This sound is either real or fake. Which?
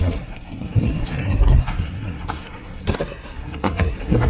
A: fake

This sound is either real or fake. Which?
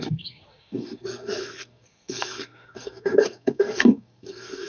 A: fake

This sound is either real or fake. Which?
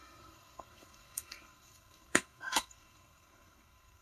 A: fake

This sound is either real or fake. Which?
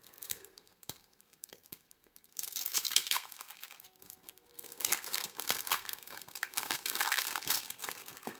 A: fake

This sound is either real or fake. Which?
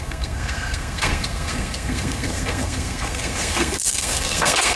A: fake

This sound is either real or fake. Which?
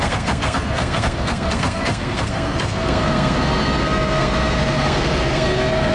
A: fake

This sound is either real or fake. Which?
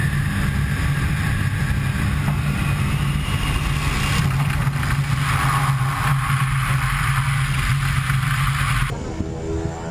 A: real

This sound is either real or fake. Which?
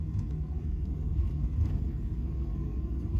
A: fake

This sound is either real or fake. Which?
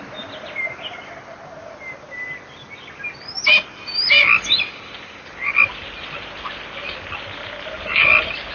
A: real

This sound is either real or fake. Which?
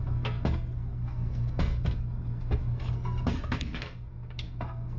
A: fake